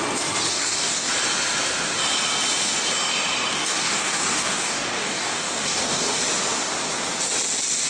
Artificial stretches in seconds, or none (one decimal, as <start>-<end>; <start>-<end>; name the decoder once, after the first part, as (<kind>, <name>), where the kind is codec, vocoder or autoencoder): 0.5-1.1 (codec, DAC); 3.5-6.2